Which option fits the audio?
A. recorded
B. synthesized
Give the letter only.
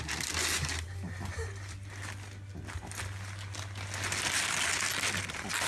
A